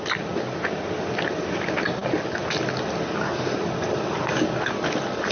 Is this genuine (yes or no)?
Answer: yes